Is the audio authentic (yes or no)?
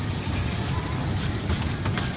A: yes